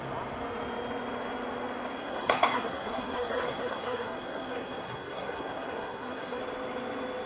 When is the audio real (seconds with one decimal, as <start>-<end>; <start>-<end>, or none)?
0.0-2.0; 6.4-7.3